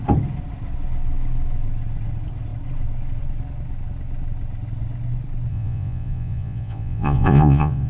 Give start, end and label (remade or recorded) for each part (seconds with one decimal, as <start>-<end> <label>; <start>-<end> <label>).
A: 0.0-5.5 recorded; 5.5-7.9 remade